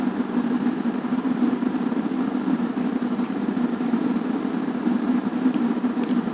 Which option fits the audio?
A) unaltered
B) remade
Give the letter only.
B